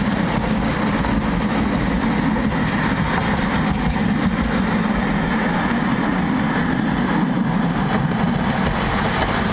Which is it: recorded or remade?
recorded